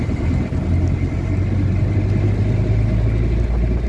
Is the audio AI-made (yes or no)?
no